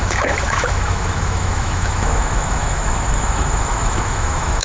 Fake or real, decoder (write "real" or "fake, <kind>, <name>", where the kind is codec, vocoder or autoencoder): fake, autoencoder, DAC-VAE